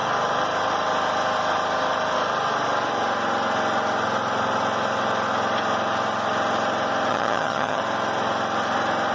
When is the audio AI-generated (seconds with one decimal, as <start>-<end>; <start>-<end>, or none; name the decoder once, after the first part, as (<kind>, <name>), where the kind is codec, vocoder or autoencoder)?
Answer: 7.1-7.8 (vocoder, HiFi-GAN)